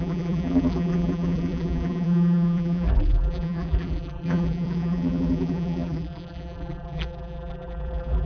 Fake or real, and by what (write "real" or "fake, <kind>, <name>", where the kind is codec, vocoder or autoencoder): fake, vocoder, BigVGAN v2